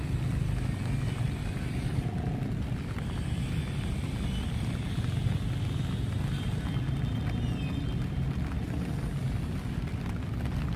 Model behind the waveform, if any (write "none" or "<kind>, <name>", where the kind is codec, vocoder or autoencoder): none